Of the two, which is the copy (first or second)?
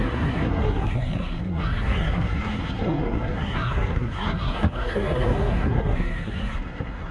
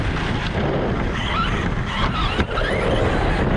first